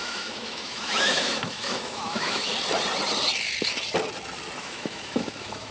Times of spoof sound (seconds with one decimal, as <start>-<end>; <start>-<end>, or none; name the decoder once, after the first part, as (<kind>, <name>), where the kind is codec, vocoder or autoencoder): 0.0-2.5 (autoencoder, DAC-VAE); 4.6-5.7